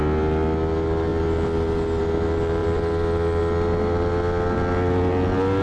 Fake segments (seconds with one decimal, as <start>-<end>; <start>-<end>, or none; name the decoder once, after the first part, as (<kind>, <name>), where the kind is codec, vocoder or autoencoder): 2.6-3.4 (vocoder, BigVGAN v2)